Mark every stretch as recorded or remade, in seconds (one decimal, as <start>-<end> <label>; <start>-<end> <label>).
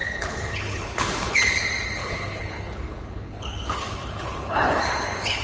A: 0.0-1.6 remade; 1.6-2.0 recorded; 2.0-5.4 remade